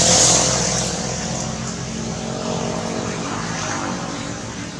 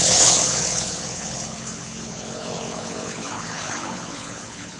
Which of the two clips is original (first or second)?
first